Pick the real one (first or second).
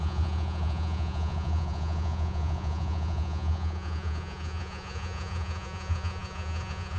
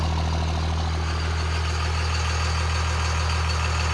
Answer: second